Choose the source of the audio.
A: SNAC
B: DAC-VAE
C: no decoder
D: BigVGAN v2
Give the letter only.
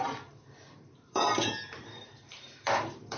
D